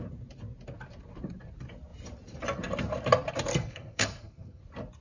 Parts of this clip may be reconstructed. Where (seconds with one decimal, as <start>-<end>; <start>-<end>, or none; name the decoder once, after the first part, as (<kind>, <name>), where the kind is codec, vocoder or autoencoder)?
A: 3.5-4.6 (codec, SNAC)